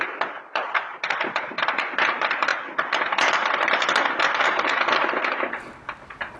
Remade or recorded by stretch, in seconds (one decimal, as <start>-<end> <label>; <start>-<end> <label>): 0.0-6.4 recorded